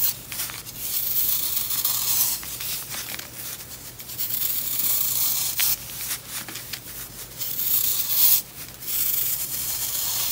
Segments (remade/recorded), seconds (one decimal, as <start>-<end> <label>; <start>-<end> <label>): 0.0-5.6 remade; 5.6-6.6 recorded; 6.6-7.9 remade; 7.9-8.5 recorded; 8.5-10.3 remade